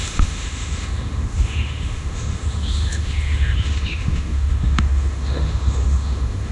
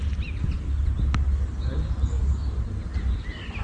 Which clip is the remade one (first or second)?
first